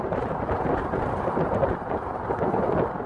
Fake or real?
real